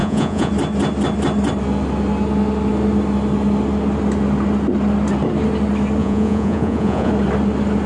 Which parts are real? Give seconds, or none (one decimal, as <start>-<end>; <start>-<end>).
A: 0.5-6.0; 7.1-7.9